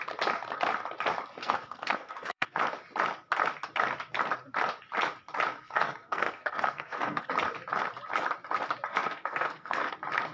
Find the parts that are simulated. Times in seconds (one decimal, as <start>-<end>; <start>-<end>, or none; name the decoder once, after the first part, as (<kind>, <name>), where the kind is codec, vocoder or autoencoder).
1.4-2.6 (codec, SNAC); 5.5-7.2; 8.9-9.9